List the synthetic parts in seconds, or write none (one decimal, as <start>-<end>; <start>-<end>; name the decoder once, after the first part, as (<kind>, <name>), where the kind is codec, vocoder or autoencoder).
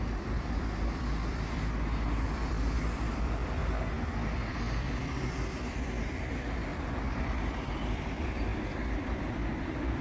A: 0.0-3.6 (vocoder, BigVGAN v2); 4.5-10.0